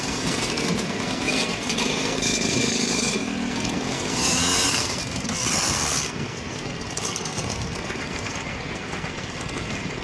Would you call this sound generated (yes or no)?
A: yes